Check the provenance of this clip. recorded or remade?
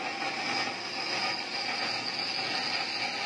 recorded